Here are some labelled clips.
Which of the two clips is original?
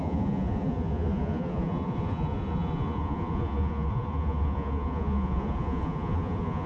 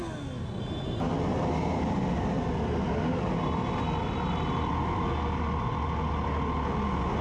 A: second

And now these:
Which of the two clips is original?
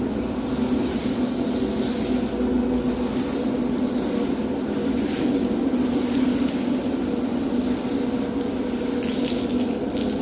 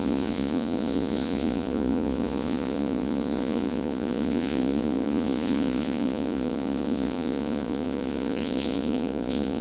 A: first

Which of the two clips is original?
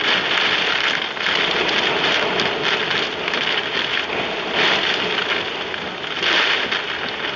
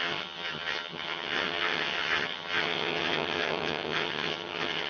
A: first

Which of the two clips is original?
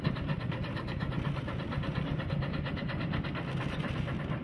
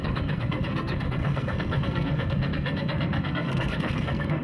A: first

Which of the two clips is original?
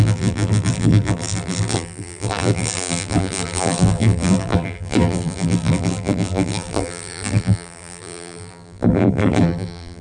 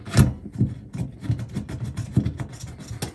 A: second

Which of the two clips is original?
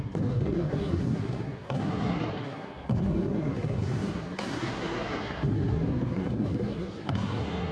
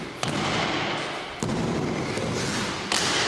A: second